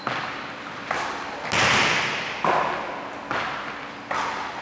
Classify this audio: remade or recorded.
recorded